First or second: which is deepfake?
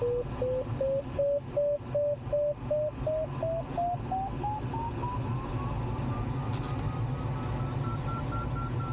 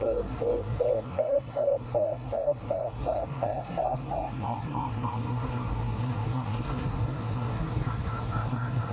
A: second